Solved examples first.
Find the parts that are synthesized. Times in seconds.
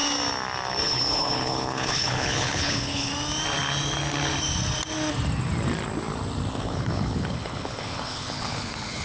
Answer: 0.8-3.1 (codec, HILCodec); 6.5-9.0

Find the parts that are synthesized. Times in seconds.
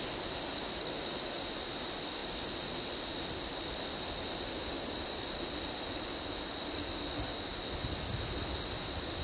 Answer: none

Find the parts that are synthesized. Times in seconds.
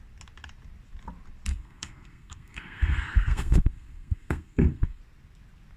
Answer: 1.5-5.0 (codec, SNAC)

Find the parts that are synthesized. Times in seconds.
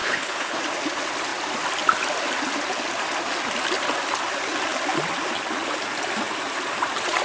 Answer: 0.0-0.6 (codec, HILCodec)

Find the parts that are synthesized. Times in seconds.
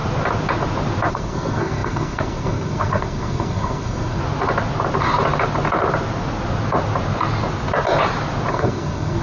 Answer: 1.1-4.2 (codec, SNAC); 8.5-9.2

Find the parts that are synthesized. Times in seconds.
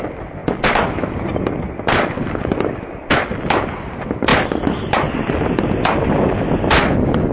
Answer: none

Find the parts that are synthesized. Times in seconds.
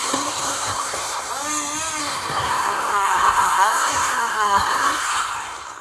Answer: 0.0-1.3 (codec, SNAC); 2.0-5.8